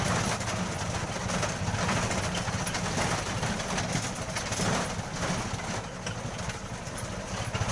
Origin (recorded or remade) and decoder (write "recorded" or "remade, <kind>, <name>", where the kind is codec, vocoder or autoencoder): recorded